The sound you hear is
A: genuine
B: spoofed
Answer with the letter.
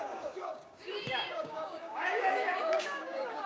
B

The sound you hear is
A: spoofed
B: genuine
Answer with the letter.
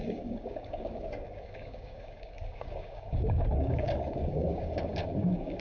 A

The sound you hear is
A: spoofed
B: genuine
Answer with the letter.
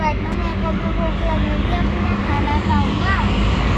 A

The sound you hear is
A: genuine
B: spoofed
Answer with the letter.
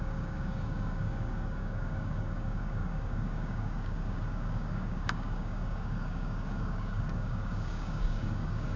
B